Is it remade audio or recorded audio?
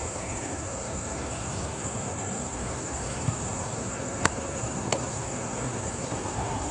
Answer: remade